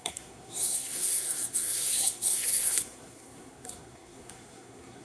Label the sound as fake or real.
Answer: fake